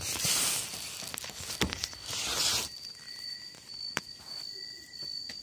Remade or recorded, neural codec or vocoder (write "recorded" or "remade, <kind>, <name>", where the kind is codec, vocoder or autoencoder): recorded